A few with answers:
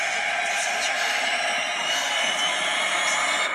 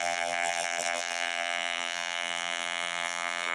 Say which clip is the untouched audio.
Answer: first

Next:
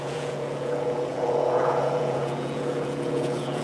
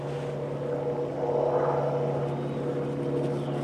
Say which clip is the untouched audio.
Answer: second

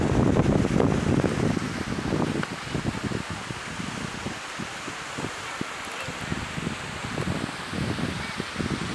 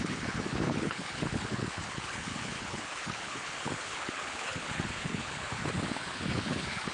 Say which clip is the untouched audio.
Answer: first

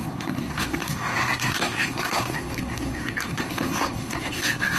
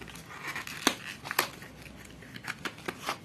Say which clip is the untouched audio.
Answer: second